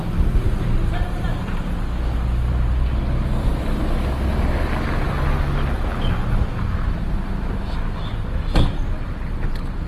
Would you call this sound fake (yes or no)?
no